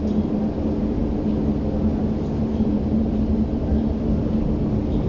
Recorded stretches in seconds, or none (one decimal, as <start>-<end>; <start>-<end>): 0.0-5.1